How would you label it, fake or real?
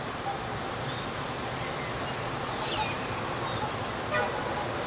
real